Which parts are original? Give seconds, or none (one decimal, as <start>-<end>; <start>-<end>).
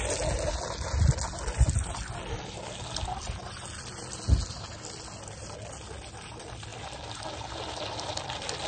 0.0-8.7